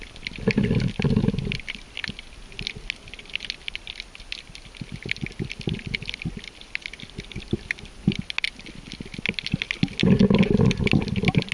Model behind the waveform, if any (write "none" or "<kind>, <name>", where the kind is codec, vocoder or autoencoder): none